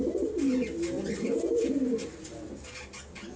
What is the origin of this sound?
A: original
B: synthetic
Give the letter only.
A